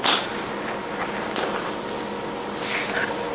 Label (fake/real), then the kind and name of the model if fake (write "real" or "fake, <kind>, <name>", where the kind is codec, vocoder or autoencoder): real